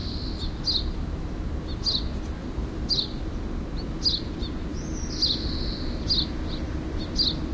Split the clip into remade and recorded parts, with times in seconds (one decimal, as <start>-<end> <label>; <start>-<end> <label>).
0.0-2.4 recorded; 2.4-2.9 remade; 2.9-7.5 recorded